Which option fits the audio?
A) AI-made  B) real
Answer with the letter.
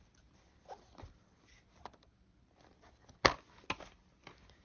B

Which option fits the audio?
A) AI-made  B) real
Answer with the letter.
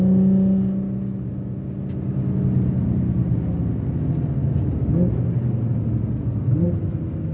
B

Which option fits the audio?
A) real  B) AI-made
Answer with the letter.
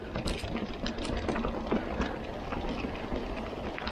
A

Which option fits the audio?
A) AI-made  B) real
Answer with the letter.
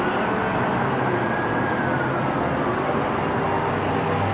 B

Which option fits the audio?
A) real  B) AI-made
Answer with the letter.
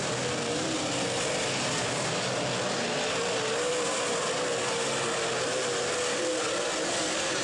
A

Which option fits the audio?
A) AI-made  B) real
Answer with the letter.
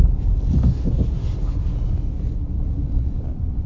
B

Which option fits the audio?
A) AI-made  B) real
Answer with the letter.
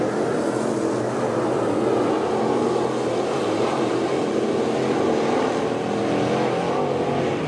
B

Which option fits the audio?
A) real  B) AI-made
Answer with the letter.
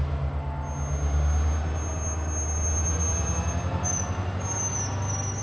A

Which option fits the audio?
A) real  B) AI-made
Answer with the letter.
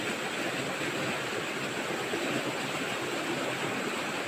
A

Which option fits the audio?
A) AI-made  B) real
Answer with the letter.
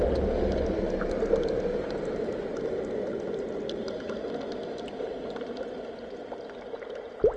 B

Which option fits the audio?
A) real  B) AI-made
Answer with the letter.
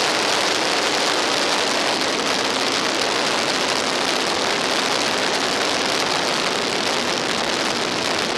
A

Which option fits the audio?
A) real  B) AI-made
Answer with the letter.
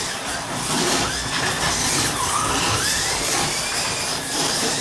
B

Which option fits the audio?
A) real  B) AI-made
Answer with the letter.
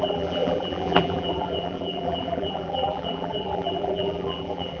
B